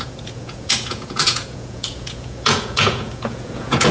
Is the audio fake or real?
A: fake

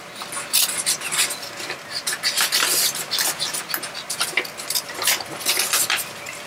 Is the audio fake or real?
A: real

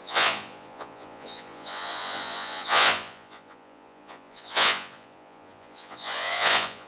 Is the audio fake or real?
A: fake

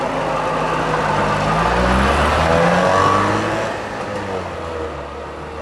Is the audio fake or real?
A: real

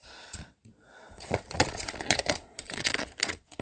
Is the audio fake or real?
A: fake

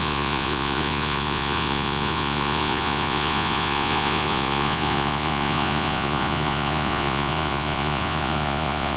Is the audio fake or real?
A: fake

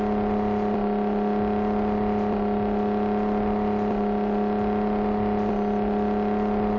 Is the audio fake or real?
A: real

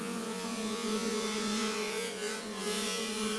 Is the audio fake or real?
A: fake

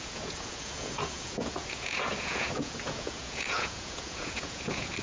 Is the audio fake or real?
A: fake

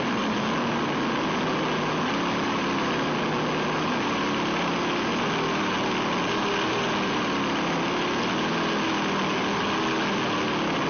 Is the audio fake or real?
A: real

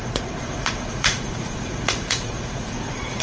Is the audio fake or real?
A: fake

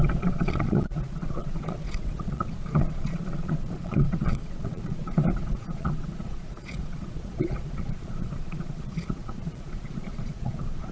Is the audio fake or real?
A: fake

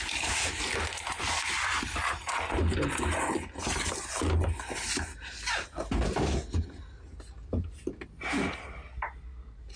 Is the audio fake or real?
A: real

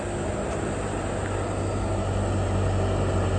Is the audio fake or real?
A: real